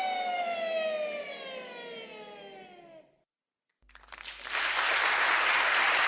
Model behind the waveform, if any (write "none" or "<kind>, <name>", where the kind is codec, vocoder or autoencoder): none